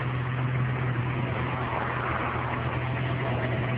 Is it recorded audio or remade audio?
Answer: recorded